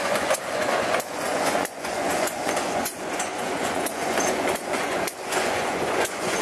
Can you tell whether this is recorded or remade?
remade